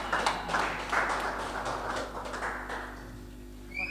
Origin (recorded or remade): recorded